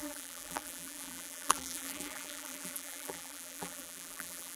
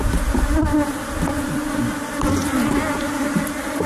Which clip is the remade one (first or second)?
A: first